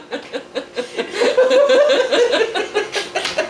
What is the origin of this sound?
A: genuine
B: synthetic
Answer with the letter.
A